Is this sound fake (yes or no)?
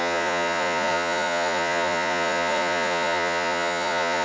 yes